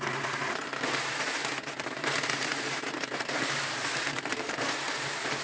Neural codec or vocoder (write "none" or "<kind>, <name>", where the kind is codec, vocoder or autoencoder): none